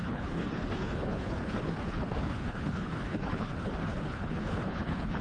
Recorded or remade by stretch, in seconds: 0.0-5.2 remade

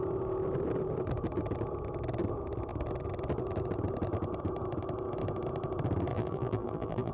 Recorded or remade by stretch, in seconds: 0.0-6.1 recorded; 6.1-7.1 remade

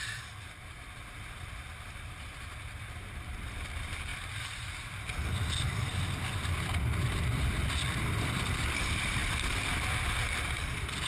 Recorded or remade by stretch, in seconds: 0.0-11.1 recorded

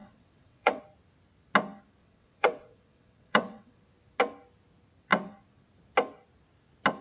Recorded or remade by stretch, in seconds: 0.0-0.8 remade; 0.8-2.0 recorded; 2.0-3.8 remade; 3.8-7.0 recorded

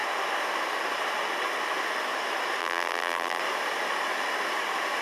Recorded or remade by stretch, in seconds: 0.0-2.6 recorded; 2.6-3.4 remade; 3.4-5.0 recorded

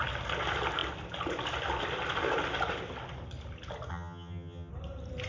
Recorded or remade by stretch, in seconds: 0.0-3.9 recorded; 3.9-4.7 remade; 4.7-5.3 recorded

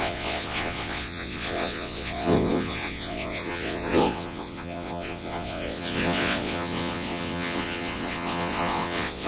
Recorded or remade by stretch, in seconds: 0.0-9.3 remade